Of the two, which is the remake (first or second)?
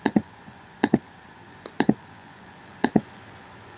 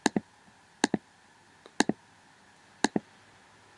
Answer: first